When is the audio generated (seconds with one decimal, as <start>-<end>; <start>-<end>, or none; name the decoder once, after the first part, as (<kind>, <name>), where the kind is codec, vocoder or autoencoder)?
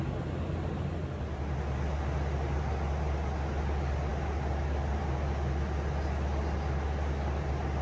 none